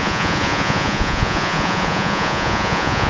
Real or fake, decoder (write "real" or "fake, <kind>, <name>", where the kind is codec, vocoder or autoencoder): fake, vocoder, Vocos